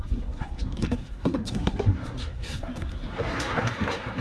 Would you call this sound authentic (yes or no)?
no